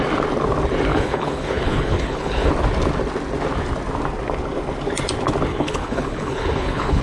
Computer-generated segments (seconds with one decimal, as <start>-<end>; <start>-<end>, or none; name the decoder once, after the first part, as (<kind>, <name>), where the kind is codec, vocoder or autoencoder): 0.9-2.5 (codec, HILCodec); 5.5-7.0